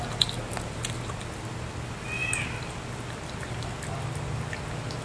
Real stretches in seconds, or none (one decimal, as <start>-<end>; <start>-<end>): 0.0-5.0